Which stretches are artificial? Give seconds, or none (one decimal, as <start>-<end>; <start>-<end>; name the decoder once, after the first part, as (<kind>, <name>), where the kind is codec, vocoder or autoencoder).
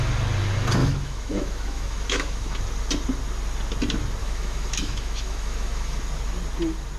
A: 0.8-2.6 (autoencoder, DAC-VAE); 4.2-6.0